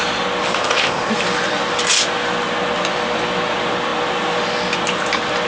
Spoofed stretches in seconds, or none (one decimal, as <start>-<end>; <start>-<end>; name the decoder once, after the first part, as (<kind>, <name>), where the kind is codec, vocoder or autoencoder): 0.6-1.1 (codec, ZipCodec)